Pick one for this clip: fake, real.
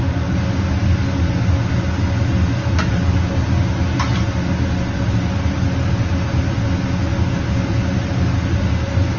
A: real